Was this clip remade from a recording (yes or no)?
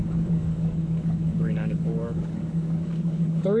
yes